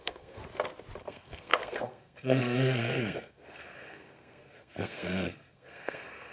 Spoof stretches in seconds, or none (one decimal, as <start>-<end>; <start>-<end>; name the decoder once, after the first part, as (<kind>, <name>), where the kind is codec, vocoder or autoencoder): 0.0-0.4 (codec, SNAC); 1.0-6.3